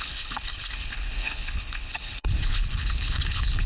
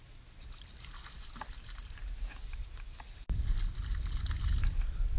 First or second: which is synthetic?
first